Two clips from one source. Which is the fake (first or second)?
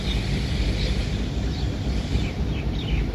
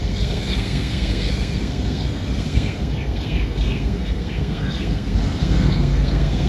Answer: second